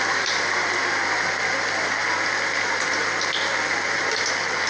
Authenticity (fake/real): real